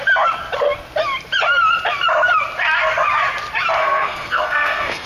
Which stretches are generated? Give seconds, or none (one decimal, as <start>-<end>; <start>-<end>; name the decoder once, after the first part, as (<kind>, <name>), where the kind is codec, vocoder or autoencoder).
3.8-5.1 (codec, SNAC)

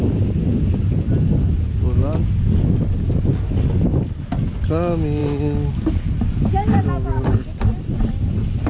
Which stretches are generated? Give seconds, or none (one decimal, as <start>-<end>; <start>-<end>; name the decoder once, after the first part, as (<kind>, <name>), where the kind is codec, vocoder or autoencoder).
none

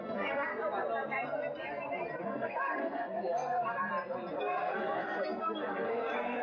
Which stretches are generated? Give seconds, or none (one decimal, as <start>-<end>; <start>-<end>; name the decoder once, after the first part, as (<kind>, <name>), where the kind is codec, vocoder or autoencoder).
0.0-0.5 (codec, SNAC); 2.2-3.9; 4.4-6.4

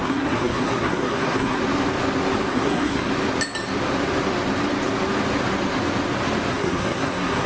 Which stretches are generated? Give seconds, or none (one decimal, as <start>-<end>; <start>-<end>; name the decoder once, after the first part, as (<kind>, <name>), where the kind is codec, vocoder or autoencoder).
0.0-1.6 (codec, SNAC); 2.5-3.1; 6.5-7.5